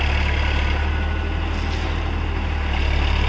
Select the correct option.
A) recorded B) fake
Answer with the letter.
A